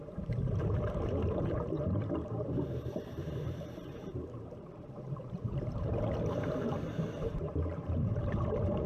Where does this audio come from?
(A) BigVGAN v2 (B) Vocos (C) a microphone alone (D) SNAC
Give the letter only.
A